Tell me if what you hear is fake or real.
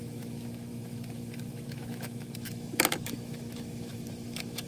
fake